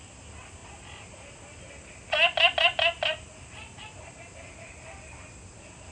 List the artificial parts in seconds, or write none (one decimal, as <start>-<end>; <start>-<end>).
none